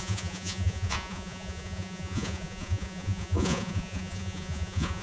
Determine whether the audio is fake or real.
fake